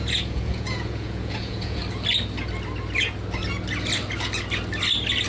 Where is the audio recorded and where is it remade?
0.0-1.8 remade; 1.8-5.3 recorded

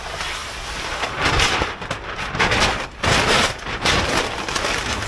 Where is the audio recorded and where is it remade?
0.0-5.1 recorded

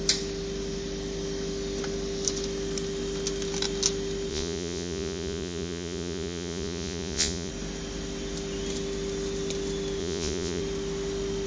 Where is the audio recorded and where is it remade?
0.0-4.3 recorded; 4.3-7.5 remade; 7.5-10.0 recorded; 10.0-10.6 remade; 10.6-11.5 recorded

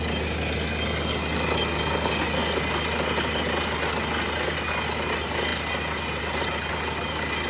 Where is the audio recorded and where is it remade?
0.0-7.5 recorded

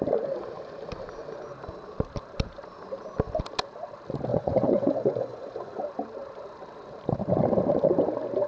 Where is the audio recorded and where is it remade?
0.0-4.3 recorded; 4.3-5.8 remade; 5.8-8.5 recorded

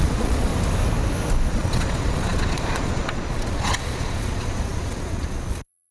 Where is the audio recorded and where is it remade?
0.0-0.5 remade; 0.5-1.5 recorded; 1.5-5.9 remade